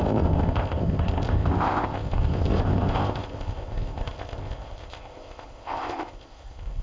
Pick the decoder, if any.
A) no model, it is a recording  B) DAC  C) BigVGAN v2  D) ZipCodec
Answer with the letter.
D